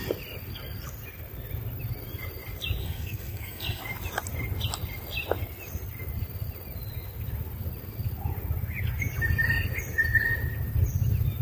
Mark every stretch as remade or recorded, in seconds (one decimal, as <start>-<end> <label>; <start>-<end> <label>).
0.0-2.8 recorded; 2.8-3.8 remade; 3.8-11.4 recorded